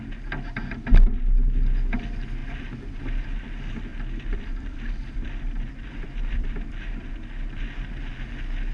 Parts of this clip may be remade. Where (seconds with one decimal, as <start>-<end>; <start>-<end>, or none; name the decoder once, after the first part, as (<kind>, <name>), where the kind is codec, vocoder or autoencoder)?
3.9-7.1 (vocoder, BigVGAN v2)